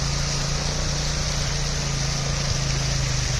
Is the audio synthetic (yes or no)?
no